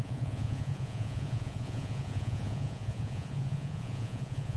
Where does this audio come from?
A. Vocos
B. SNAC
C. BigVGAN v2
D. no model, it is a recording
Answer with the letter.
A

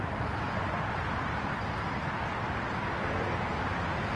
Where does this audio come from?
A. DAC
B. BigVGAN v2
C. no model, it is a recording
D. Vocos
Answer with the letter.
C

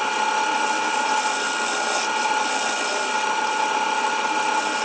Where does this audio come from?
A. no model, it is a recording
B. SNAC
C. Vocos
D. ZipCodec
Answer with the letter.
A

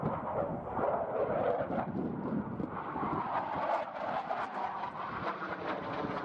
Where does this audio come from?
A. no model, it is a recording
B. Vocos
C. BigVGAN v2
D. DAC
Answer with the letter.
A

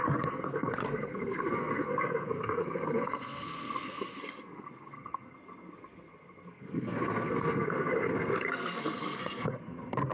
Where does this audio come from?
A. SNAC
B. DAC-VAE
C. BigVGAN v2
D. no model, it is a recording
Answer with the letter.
A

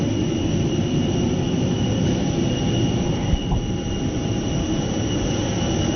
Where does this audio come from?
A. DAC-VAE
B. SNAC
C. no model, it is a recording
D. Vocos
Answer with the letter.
C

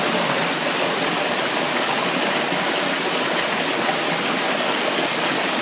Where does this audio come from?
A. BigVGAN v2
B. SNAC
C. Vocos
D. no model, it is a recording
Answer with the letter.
D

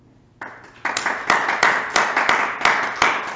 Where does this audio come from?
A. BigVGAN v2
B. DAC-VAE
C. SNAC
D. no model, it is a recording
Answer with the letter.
D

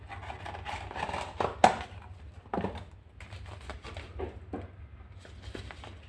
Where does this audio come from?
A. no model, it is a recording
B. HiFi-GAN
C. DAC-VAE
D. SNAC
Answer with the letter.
A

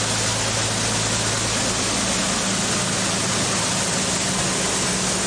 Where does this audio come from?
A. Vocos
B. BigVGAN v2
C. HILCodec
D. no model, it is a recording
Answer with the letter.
D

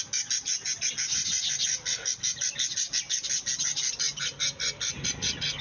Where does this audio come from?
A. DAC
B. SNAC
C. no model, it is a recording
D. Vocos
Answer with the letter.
C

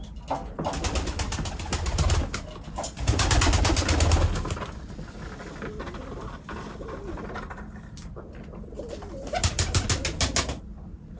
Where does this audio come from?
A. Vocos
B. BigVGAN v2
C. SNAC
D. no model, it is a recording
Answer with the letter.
D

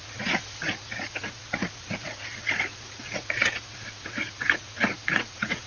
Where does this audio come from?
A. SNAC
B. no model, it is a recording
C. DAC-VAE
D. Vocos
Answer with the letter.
D